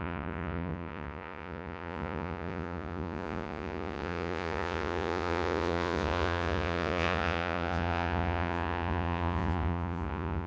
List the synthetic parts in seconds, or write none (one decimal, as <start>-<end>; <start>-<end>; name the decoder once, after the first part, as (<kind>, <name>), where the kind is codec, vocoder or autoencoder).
0.0-10.5 (vocoder, Vocos)